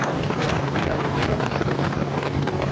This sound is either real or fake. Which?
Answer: fake